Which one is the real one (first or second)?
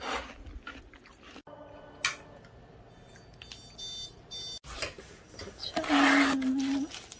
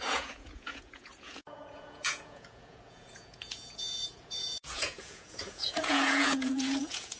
first